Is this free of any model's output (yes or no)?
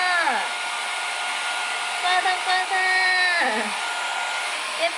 yes